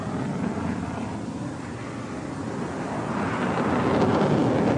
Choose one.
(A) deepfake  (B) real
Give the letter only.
B